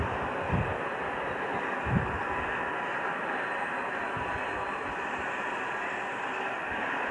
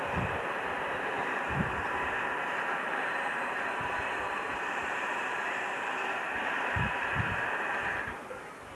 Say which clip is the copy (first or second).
second